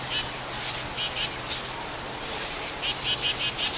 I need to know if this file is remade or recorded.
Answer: recorded